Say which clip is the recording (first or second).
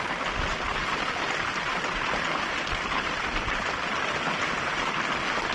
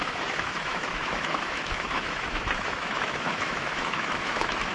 first